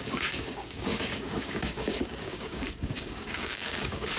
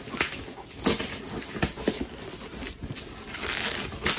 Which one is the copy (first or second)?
first